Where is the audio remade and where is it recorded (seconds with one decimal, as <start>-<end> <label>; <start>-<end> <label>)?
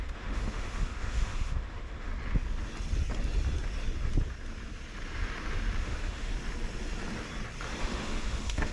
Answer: 0.0-2.1 remade; 2.1-5.8 recorded; 5.8-6.3 remade; 6.3-7.8 recorded; 7.8-8.7 remade